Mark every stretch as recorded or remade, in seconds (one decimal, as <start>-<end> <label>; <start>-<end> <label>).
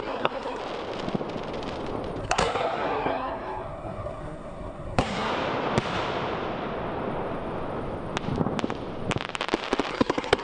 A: 0.0-0.6 remade; 0.6-2.2 recorded; 2.2-5.3 remade; 5.3-9.9 recorded; 9.9-10.4 remade